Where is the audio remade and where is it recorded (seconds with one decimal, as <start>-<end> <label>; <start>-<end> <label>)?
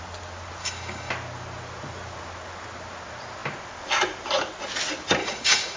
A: 0.0-0.6 recorded; 0.6-1.1 remade; 1.1-5.2 recorded; 5.2-5.8 remade